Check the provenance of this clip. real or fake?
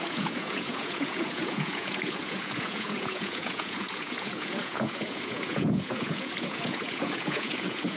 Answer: fake